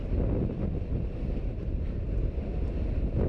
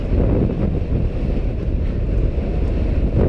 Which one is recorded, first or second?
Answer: second